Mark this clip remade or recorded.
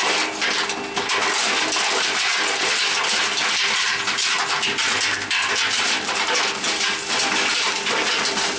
recorded